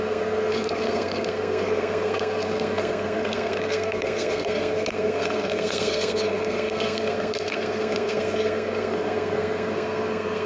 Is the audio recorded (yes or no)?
no